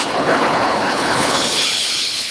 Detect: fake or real fake